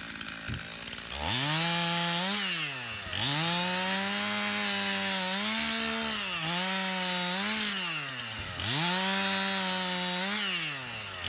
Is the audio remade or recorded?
recorded